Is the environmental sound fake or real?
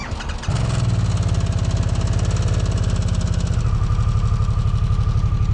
real